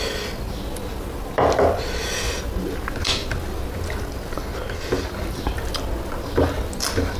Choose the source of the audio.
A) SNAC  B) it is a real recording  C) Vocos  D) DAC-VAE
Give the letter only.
B